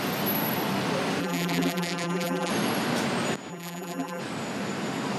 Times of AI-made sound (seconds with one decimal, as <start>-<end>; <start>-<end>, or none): 1.2-2.5; 3.5-4.2